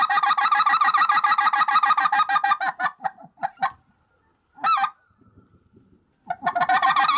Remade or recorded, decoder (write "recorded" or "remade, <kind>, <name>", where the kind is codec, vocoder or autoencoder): recorded